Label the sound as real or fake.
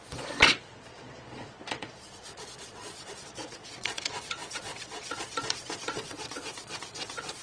fake